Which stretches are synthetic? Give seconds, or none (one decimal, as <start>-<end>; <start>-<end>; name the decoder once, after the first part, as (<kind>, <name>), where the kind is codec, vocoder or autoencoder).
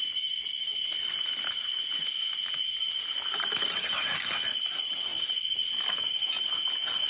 none